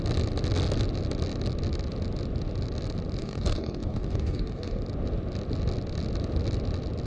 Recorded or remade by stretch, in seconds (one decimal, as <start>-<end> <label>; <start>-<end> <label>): 0.0-3.2 recorded; 3.2-4.8 remade; 4.8-7.1 recorded

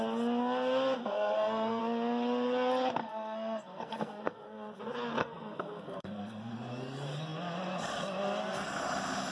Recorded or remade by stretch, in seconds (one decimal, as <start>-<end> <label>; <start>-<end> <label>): 0.0-1.0 recorded; 1.0-1.8 remade; 1.8-3.0 recorded; 3.0-4.8 remade; 4.8-5.2 recorded; 5.2-6.5 remade; 6.5-9.3 recorded

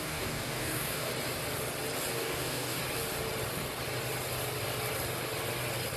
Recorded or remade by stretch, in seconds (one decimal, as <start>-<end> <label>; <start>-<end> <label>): 0.0-1.1 remade; 1.1-2.1 recorded; 2.1-2.8 remade; 2.8-6.0 recorded

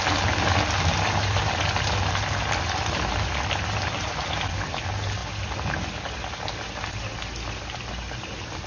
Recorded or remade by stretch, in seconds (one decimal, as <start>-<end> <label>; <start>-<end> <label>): 0.0-8.7 recorded

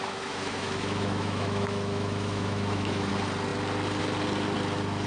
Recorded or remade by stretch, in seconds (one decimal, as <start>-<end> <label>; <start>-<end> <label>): 0.0-3.1 remade; 3.1-5.1 recorded

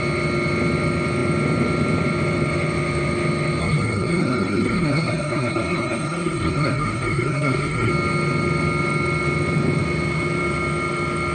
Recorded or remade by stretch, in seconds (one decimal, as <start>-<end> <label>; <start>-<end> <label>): 0.0-3.6 recorded; 3.6-7.9 remade; 7.9-11.3 recorded

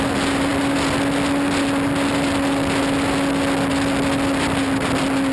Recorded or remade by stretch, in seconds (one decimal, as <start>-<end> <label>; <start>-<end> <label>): 0.0-5.3 recorded